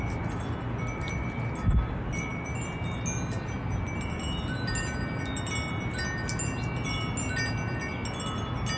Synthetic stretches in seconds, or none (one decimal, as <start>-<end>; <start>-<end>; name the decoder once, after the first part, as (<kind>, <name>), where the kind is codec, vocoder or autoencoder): none